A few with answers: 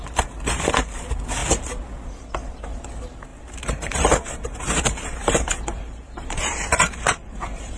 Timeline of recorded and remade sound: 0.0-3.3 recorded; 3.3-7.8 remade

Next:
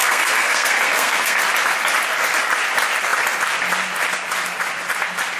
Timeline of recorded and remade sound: 0.0-1.4 remade; 1.4-5.4 recorded

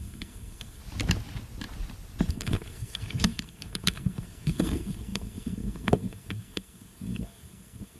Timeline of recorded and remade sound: 0.0-0.8 remade; 0.8-2.3 recorded; 2.3-8.0 remade

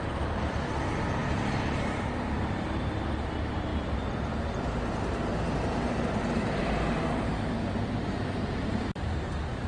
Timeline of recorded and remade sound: 0.0-9.7 recorded

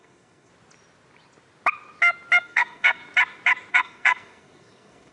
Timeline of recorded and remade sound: 0.0-0.5 remade; 0.5-2.4 recorded; 2.4-3.0 remade; 3.0-3.7 recorded; 3.7-5.1 remade